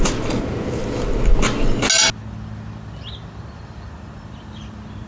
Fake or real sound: real